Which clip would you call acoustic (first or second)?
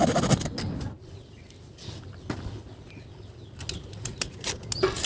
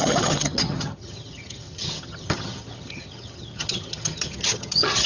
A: first